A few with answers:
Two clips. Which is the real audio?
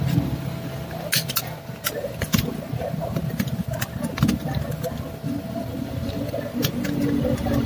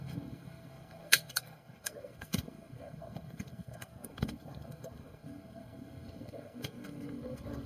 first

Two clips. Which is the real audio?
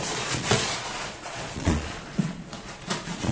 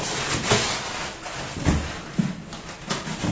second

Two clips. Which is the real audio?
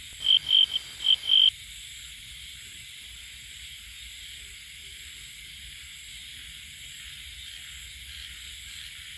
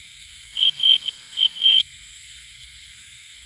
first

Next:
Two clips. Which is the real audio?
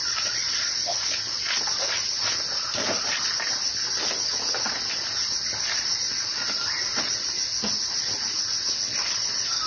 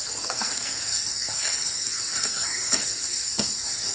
first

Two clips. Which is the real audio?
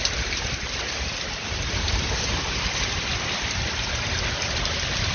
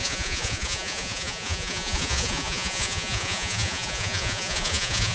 first